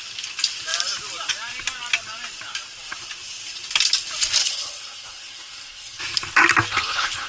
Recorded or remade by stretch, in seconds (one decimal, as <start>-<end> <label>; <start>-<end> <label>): 0.0-4.4 recorded; 4.4-6.0 remade; 6.0-6.7 recorded; 6.7-7.3 remade